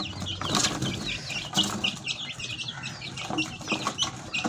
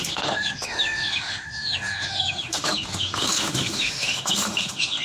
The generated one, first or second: second